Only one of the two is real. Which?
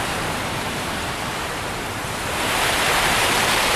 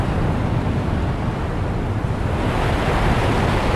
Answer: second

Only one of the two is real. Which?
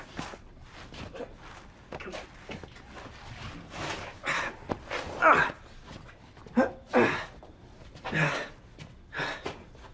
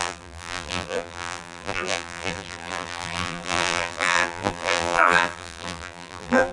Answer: first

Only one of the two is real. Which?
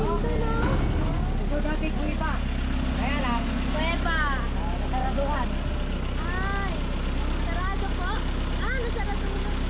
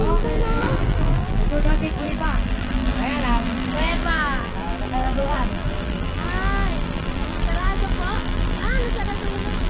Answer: first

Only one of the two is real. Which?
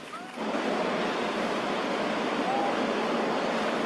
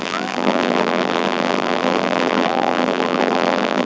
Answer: first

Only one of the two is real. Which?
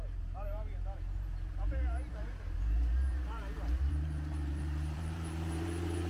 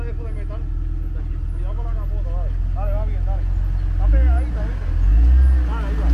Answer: second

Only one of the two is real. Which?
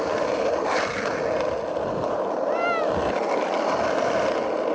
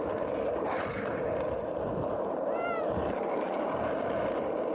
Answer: first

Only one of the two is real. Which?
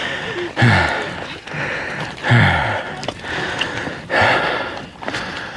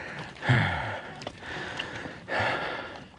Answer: first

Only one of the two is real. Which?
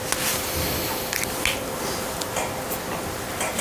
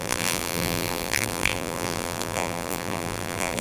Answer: first